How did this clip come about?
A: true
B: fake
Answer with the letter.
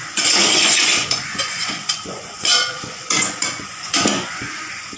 B